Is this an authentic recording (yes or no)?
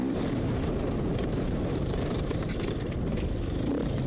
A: no